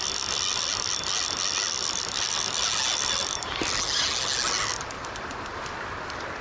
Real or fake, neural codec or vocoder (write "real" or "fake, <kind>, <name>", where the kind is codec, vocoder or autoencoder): real